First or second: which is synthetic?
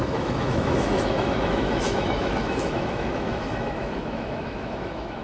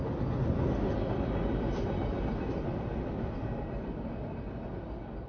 first